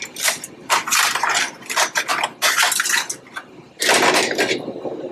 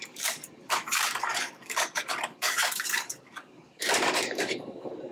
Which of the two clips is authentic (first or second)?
first